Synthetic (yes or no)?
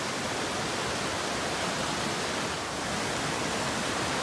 no